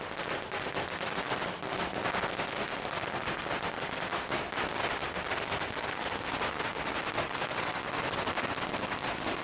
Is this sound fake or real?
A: real